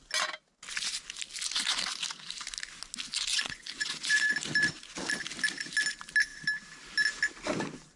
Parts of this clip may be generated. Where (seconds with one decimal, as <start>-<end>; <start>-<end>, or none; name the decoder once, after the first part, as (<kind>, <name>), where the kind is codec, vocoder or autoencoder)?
3.3-4.3 (vocoder, Vocos)

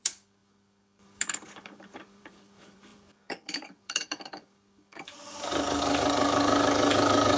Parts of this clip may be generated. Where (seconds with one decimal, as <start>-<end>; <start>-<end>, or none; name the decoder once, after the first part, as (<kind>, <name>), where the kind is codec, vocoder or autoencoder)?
0.0-7.4 (codec, DAC)

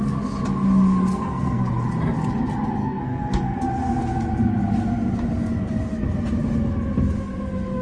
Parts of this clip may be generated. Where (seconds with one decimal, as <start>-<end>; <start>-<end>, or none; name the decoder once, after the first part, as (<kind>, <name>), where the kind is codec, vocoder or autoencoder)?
1.1-1.7 (codec, SNAC); 2.8-3.6

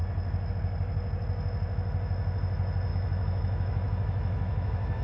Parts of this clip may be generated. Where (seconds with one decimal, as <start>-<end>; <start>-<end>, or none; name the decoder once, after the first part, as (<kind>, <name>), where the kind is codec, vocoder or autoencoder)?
2.9-5.0 (autoencoder, DAC-VAE)

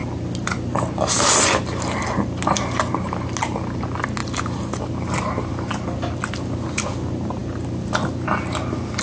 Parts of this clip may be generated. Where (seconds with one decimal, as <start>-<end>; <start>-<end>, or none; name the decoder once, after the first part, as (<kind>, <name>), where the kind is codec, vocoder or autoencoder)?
none